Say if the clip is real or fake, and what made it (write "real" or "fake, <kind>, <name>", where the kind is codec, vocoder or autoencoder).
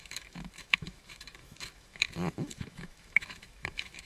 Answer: fake, autoencoder, DAC-VAE